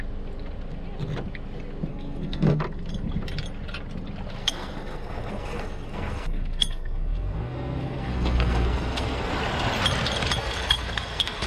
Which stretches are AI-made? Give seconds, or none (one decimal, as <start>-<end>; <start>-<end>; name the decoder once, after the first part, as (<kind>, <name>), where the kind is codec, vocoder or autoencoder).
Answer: 1.9-2.6 (codec, SNAC); 4.4-9.3; 10.4-11.5